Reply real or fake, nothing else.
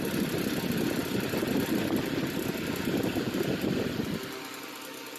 real